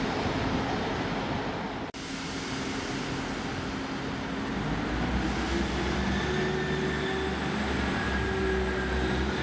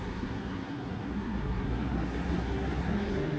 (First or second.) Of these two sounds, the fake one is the second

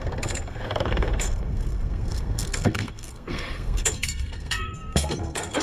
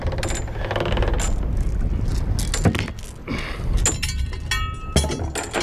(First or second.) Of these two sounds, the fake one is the first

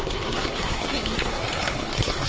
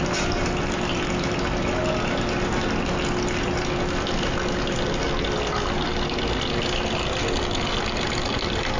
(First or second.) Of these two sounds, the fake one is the first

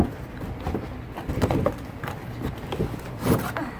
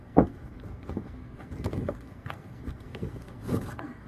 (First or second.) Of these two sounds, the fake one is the second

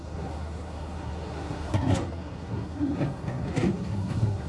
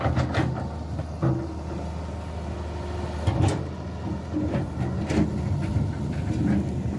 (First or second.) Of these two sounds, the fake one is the first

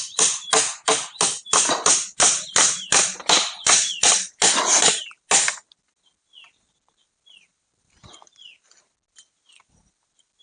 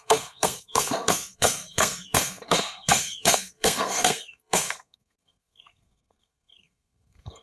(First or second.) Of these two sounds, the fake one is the second